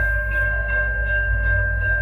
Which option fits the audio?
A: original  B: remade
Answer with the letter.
B